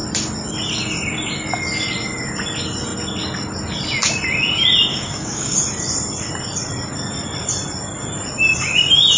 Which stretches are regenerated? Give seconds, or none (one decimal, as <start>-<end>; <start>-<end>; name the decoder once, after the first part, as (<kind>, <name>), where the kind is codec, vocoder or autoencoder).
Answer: 4.9-5.6 (codec, DAC)